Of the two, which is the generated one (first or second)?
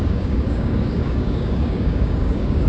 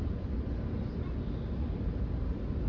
first